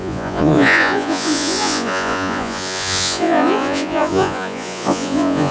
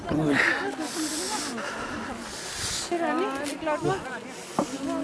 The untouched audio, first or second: second